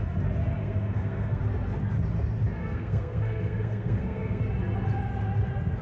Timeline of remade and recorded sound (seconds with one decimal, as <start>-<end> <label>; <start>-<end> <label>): 0.0-0.6 recorded; 0.6-1.4 remade; 1.4-2.6 recorded; 2.6-4.4 remade; 4.4-5.8 recorded